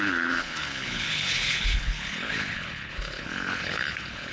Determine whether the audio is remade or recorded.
remade